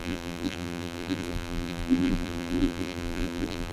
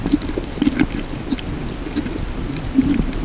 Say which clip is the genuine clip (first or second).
second